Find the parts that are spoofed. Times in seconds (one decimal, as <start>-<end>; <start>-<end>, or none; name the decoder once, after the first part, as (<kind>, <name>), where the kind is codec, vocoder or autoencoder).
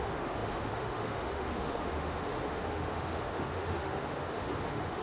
0.0-5.0 (autoencoder, DAC-VAE)